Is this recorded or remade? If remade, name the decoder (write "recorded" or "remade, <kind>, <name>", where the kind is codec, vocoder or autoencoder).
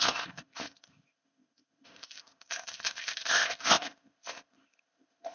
remade, codec, ZipCodec